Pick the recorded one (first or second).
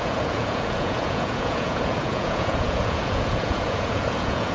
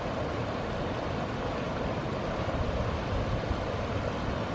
second